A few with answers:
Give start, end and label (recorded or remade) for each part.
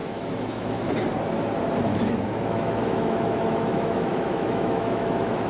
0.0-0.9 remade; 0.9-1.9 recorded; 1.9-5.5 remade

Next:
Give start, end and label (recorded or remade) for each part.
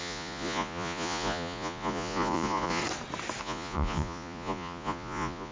0.0-2.8 remade; 2.8-3.4 recorded; 3.4-5.5 remade